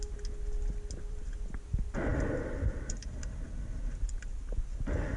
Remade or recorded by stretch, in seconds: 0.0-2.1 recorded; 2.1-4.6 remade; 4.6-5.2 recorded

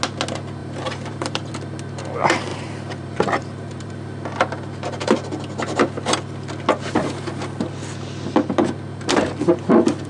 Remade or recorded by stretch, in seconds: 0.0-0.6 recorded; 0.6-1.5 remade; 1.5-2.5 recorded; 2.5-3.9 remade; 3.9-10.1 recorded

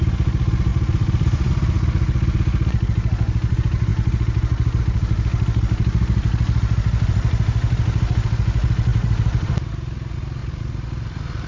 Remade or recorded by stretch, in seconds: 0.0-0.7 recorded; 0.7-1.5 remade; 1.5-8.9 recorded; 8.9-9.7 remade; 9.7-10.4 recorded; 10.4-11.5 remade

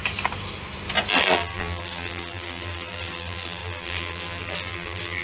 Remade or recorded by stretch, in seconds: 0.0-1.1 recorded; 1.1-5.2 remade